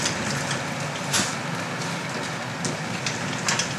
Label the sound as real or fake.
real